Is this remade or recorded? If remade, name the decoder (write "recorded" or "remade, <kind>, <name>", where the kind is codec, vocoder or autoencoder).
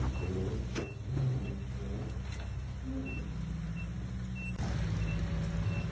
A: recorded